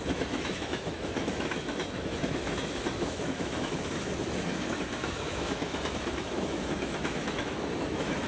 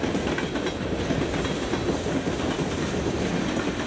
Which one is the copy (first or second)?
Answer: first